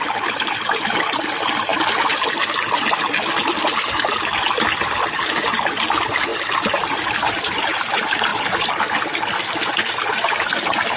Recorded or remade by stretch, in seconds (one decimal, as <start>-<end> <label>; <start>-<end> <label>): 0.0-11.0 recorded

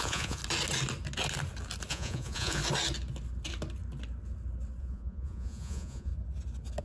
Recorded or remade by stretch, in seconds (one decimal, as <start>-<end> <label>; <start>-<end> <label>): 0.0-0.4 remade; 0.4-1.9 recorded; 1.9-2.6 remade; 2.6-4.8 recorded; 4.8-6.1 remade; 6.1-6.8 recorded

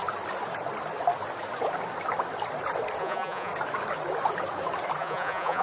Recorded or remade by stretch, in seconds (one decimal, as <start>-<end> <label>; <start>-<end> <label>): 0.0-3.0 recorded; 3.0-3.5 remade; 3.5-5.0 recorded; 5.0-5.6 remade

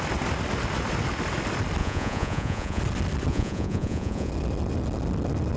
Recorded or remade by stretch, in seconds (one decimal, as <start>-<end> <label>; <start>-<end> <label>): 0.0-1.8 recorded; 1.8-2.8 remade; 2.8-3.3 recorded; 3.3-4.3 remade; 4.3-5.6 recorded

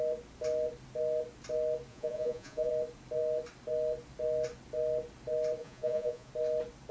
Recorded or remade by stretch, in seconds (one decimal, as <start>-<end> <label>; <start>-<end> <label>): 0.0-1.9 recorded; 1.9-2.7 remade; 2.7-5.6 recorded; 5.6-6.3 remade; 6.3-6.9 recorded

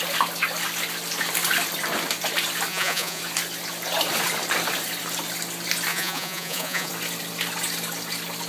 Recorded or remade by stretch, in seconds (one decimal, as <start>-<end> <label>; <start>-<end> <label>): 0.0-2.7 recorded; 2.7-3.2 remade; 3.2-5.9 recorded; 5.9-6.9 remade; 6.9-8.5 recorded

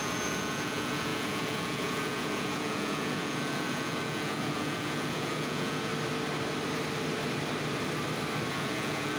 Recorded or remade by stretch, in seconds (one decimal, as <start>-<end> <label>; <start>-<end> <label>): 0.0-5.9 remade; 5.9-8.5 recorded; 8.5-9.2 remade

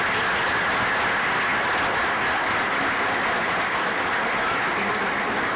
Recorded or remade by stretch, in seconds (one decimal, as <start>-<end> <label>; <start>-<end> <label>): 0.0-5.6 recorded